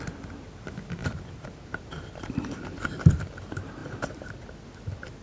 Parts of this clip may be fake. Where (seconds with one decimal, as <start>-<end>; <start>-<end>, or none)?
1.0-2.5; 3.8-4.3